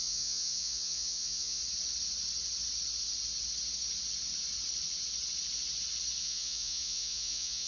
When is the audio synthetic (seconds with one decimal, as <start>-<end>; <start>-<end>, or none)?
0.0-1.6; 6.2-7.7